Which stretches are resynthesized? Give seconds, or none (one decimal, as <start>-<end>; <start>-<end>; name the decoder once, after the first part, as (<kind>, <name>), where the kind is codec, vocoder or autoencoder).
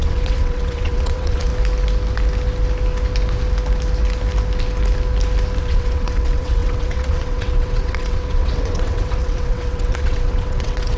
0.0-1.5 (vocoder, WaveNeXt); 5.6-11.0